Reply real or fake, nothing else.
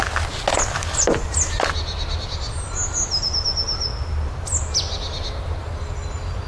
real